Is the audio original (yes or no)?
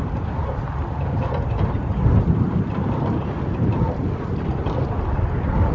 yes